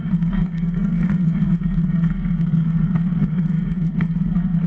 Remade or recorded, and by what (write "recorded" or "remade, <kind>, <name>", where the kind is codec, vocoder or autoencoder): remade, codec, SNAC